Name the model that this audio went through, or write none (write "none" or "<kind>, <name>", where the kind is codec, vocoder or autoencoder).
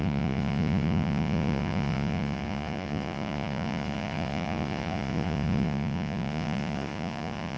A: vocoder, Vocos